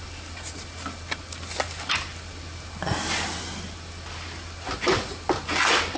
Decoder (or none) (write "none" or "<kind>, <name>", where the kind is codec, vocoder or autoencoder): none